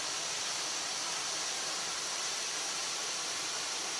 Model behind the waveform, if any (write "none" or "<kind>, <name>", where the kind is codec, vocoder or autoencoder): none